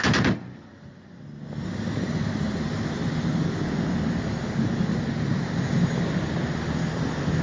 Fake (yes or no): no